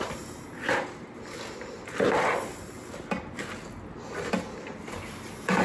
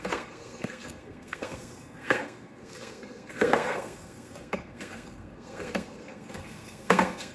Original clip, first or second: first